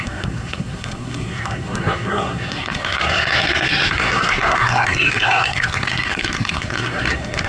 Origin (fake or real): fake